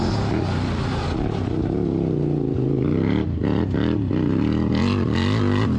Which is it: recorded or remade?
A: recorded